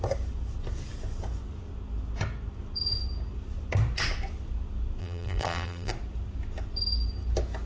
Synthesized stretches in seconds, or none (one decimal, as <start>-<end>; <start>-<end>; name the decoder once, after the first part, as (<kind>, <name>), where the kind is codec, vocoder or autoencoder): 5.0-5.9 (vocoder, BigVGAN v2)